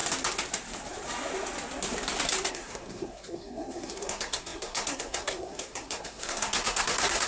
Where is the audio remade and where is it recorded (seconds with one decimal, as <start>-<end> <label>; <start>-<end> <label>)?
0.0-2.5 recorded; 2.5-7.3 remade